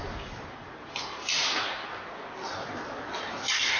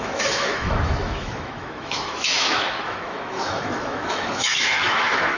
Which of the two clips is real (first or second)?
first